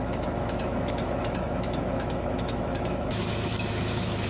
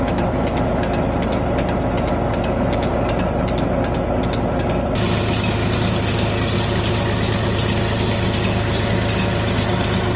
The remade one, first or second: first